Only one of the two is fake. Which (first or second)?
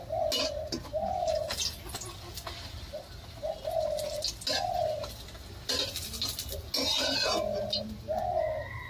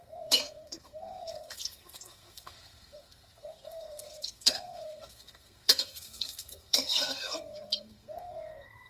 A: second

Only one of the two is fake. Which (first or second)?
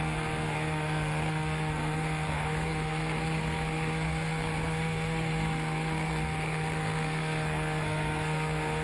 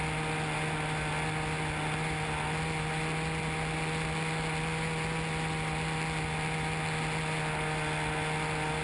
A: first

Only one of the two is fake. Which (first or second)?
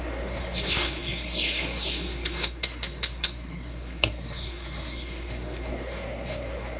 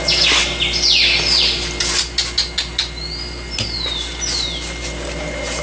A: first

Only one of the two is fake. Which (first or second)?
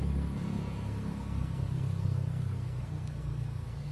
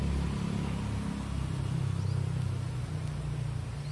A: first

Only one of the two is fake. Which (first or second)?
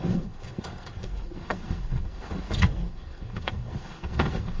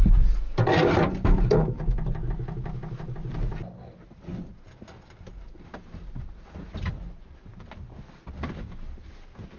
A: first